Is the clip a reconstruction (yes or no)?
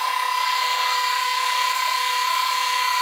yes